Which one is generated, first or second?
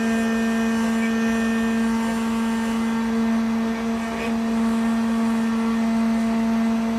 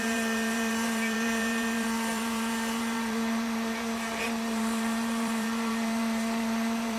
second